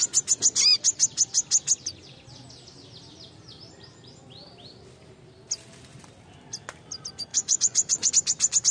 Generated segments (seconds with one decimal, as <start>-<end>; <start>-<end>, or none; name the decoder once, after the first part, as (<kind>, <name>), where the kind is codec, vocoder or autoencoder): 7.3-8.1 (vocoder, Vocos)